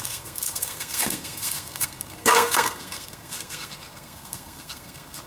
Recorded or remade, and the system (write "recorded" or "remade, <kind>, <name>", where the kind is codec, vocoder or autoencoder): remade, codec, SNAC